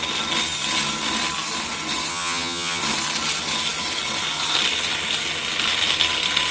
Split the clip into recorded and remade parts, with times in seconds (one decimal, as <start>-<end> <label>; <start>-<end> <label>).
0.0-2.1 recorded; 2.1-2.8 remade; 2.8-6.5 recorded